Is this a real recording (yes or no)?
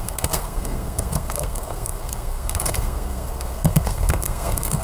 no